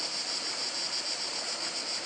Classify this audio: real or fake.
real